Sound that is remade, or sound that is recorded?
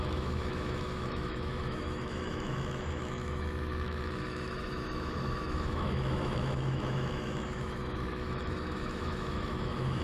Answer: remade